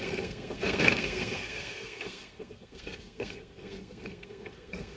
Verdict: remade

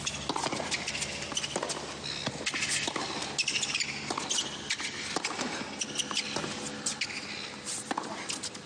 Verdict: recorded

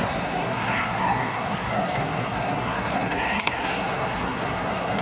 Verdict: remade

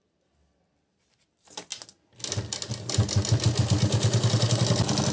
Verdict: recorded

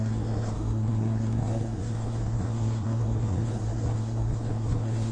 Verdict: remade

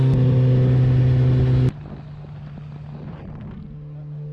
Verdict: recorded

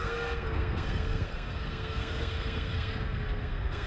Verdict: remade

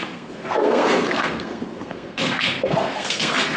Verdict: remade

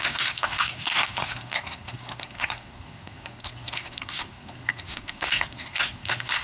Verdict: remade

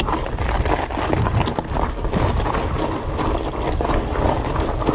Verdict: recorded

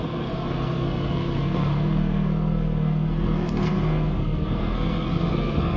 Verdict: remade